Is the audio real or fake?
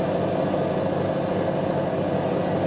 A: real